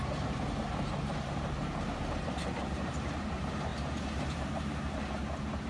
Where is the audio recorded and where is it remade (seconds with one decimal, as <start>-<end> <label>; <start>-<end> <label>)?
0.0-5.7 remade